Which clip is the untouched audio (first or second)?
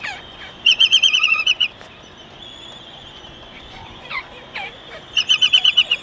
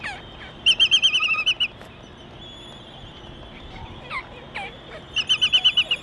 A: second